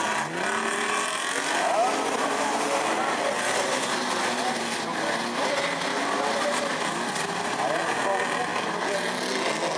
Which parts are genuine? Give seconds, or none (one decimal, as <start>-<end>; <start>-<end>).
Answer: 0.0-9.8